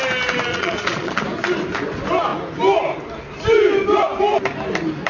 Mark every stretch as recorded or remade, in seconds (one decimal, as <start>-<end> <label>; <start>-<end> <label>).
0.0-0.5 recorded; 0.5-1.2 remade; 1.2-5.1 recorded